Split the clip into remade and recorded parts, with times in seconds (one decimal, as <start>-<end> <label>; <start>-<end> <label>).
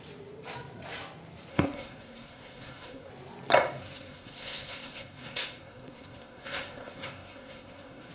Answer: 0.0-1.5 recorded; 1.5-3.1 remade; 3.1-3.8 recorded; 3.8-8.1 remade